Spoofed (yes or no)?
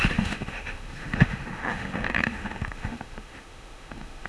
yes